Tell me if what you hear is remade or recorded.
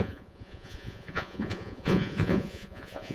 remade